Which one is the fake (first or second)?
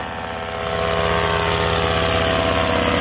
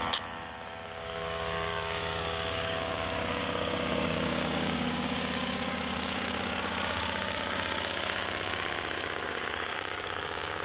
second